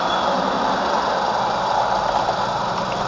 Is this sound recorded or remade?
recorded